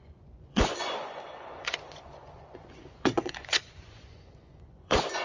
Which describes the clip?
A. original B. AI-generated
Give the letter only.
B